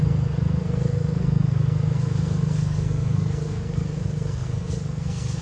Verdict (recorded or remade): remade